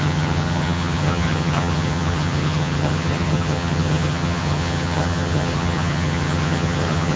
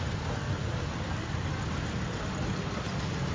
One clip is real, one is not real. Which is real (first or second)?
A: second